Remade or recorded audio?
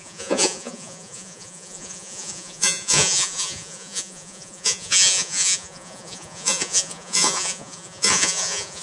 remade